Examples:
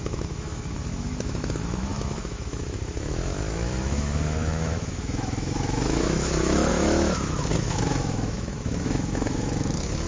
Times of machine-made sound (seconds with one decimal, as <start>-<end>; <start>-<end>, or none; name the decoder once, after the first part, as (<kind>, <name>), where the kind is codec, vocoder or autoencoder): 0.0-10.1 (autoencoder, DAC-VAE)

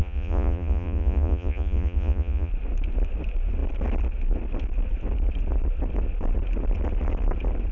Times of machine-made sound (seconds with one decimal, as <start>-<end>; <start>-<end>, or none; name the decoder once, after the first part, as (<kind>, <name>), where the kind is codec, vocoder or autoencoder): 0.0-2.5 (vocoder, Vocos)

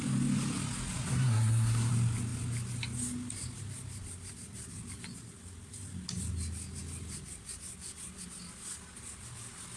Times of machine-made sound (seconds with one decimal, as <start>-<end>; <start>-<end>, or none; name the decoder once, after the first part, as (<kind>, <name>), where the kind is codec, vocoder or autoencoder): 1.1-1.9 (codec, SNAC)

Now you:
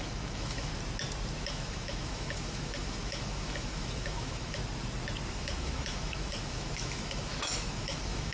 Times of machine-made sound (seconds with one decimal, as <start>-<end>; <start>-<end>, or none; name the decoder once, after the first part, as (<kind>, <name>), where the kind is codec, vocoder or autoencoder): 0.0-0.7 (autoencoder, DAC-VAE); 1.4-4.6; 5.3-8.3

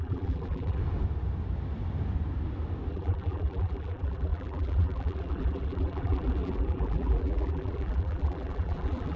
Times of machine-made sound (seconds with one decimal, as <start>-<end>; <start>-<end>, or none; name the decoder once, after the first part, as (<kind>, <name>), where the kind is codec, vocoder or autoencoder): 0.0-0.8 (vocoder, BigVGAN v2); 2.9-9.2

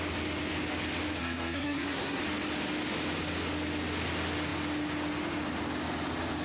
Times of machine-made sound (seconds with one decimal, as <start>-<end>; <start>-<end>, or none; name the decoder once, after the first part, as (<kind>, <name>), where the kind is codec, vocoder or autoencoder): 1.2-2.2 (codec, SNAC)

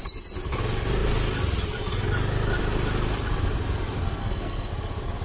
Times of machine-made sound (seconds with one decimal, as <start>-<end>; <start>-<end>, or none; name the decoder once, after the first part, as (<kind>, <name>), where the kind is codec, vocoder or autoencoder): 4.2-4.7 (codec, SNAC)